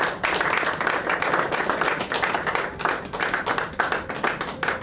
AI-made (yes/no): no